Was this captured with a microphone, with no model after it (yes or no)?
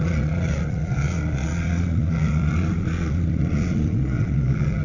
no